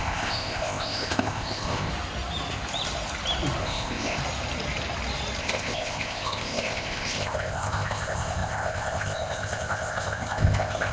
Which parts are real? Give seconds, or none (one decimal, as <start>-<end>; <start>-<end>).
1.9-3.6; 4.2-5.4